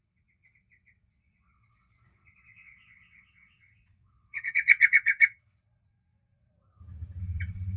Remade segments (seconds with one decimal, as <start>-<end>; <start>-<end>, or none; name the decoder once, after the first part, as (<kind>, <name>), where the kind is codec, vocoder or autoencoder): 0.0-6.5 (vocoder, WaveNeXt); 7.2-7.8